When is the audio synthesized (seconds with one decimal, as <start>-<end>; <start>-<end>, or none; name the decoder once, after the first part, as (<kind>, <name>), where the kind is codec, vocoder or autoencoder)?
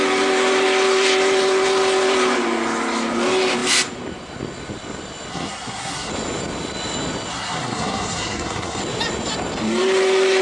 5.3-6.1 (codec, SNAC); 7.3-8.8